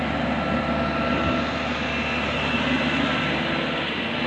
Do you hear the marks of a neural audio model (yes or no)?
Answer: no